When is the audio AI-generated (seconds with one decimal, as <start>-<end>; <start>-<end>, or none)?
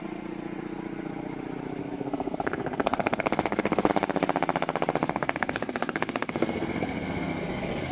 1.8-3.9; 5.0-7.9